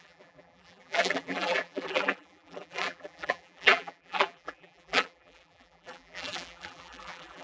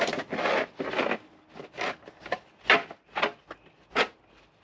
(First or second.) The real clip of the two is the second